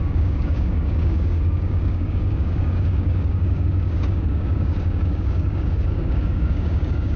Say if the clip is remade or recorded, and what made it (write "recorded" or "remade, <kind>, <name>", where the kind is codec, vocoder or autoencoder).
remade, codec, DAC